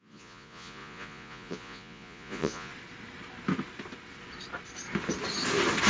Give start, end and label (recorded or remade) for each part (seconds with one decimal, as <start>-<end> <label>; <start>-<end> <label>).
0.0-2.7 remade; 2.7-5.9 recorded